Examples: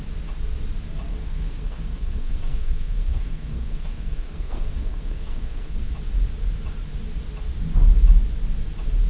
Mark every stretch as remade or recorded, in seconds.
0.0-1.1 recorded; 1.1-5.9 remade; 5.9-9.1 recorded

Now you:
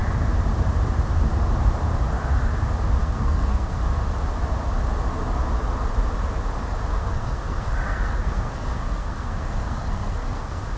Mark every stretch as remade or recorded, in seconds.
0.0-3.0 recorded; 3.0-3.8 remade; 3.8-6.9 recorded; 6.9-10.8 remade

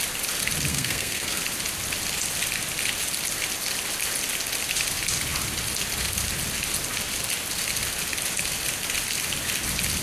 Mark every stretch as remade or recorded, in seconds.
0.0-0.7 recorded; 0.7-1.4 remade; 1.4-10.0 recorded

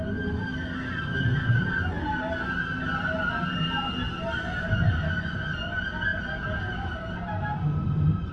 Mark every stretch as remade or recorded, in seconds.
0.0-8.3 recorded

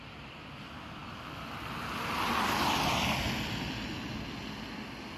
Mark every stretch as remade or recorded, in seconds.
0.0-5.2 recorded

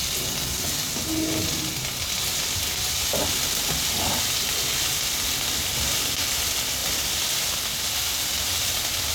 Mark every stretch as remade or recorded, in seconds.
0.0-9.1 recorded

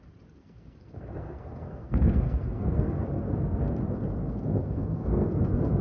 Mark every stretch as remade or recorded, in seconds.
0.0-0.4 recorded; 0.4-3.8 remade; 3.8-4.2 recorded; 4.2-5.8 remade